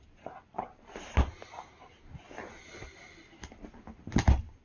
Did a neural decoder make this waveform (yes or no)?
no